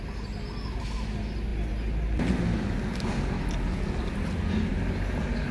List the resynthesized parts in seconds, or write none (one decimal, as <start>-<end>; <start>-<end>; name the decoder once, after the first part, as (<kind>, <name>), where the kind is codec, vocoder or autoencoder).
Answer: none